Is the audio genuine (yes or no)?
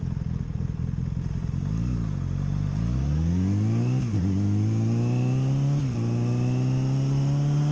yes